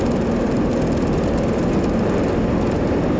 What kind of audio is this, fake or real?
real